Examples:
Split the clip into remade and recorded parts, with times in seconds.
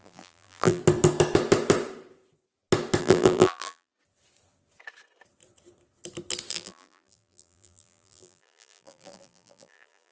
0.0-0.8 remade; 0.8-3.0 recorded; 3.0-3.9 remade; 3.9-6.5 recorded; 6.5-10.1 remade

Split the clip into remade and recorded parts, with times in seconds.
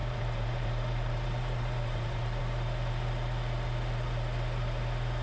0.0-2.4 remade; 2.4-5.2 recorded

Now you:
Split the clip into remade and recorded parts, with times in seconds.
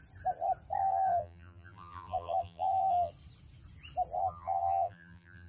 0.0-0.8 recorded; 0.8-3.1 remade; 3.1-4.2 recorded; 4.2-5.5 remade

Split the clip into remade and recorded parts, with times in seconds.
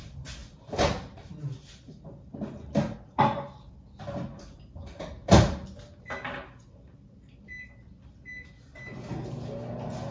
0.0-10.1 recorded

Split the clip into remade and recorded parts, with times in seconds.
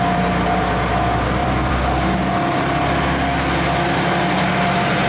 0.0-1.4 recorded; 1.4-2.0 remade; 2.0-5.1 recorded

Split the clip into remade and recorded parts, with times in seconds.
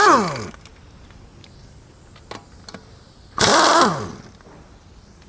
0.0-5.3 recorded